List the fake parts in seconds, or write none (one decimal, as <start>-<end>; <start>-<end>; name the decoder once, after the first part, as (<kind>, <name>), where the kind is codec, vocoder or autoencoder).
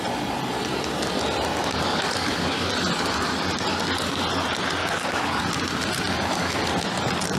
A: 1.6-2.7 (codec, DAC); 4.8-5.4